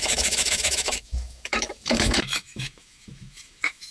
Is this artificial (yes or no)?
yes